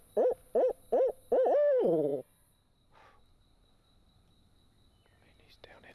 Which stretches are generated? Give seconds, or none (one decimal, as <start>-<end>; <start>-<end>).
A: none

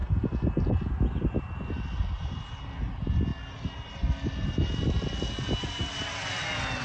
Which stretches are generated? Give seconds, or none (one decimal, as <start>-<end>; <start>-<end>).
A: none

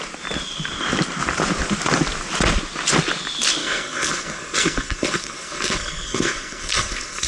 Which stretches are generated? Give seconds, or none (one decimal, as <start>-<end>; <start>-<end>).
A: 3.6-7.3

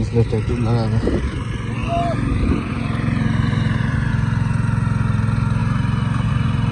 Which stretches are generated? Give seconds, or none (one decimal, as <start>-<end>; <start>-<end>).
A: 1.8-4.1; 5.6-6.3

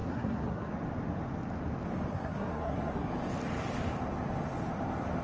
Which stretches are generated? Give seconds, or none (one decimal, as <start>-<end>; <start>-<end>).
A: 0.0-0.7; 2.1-3.1

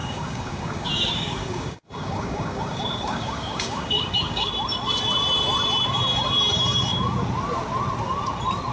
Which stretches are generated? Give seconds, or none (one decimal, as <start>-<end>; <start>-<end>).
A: 0.0-4.5

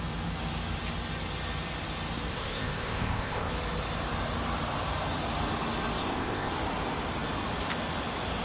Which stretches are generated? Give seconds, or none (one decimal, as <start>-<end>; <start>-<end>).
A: 2.3-3.5; 6.0-6.5